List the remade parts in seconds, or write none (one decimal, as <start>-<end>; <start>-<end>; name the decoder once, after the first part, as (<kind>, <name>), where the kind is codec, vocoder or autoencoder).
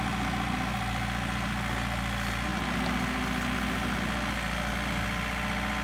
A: none